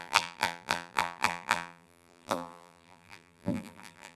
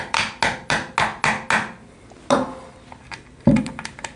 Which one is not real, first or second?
first